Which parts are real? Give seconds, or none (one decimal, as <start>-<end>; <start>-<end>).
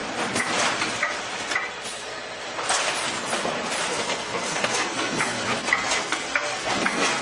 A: 0.0-3.9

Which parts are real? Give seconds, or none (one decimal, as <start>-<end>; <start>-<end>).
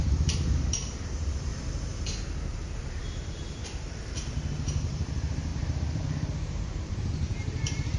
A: 1.5-2.5; 3.6-4.5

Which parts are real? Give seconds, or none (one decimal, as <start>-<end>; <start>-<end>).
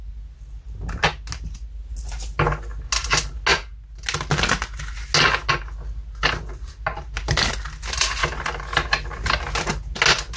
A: 0.0-10.4